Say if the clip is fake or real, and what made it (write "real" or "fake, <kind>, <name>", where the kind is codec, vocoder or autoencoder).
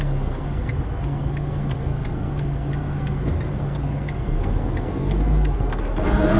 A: fake, codec, SNAC